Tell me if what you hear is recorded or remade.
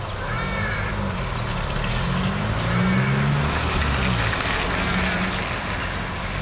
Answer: recorded